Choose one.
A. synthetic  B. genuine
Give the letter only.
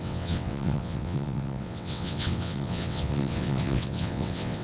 A